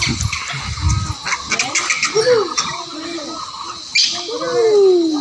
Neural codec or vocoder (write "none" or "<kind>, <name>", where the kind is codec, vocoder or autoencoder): none